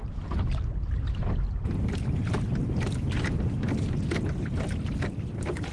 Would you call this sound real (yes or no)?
yes